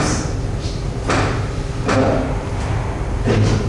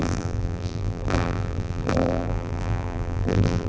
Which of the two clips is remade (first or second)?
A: second